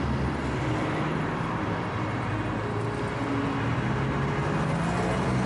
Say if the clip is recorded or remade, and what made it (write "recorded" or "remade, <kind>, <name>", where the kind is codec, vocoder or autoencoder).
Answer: recorded